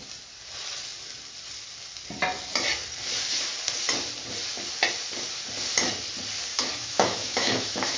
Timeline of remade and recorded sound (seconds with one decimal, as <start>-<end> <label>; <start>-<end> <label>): 0.0-6.5 recorded; 6.5-8.0 remade

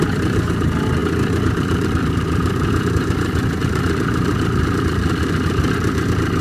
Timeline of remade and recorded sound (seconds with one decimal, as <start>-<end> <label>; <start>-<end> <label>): 0.0-1.0 recorded; 1.0-2.7 remade; 2.7-3.6 recorded; 3.6-5.2 remade; 5.2-6.4 recorded

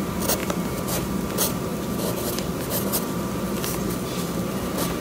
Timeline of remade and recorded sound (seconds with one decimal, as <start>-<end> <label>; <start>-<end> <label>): 0.0-5.0 recorded

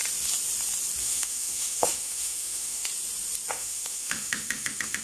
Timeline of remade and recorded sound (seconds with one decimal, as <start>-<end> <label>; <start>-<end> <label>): 0.0-1.0 recorded; 1.0-2.9 remade; 2.9-3.5 recorded; 3.5-5.0 remade

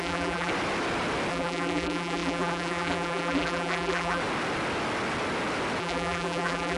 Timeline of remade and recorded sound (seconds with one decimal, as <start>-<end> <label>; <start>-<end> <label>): 0.0-0.5 remade; 0.5-1.3 recorded; 1.3-4.2 remade; 4.2-5.8 recorded; 5.8-6.8 remade

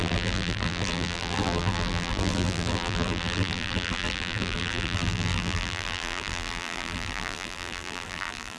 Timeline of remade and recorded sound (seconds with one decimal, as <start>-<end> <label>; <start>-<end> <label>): 0.0-8.6 remade